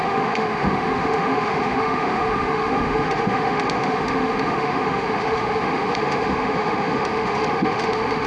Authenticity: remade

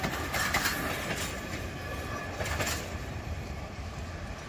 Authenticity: recorded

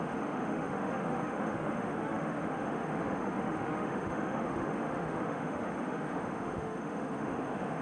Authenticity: remade